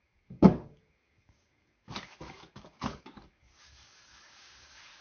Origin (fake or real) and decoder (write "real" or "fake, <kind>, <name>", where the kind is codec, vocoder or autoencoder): fake, codec, DAC